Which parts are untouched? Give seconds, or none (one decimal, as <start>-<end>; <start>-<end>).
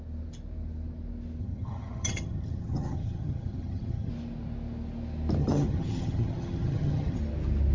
0.0-1.4; 4.1-5.4; 7.2-7.7